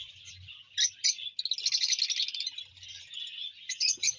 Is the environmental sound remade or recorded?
recorded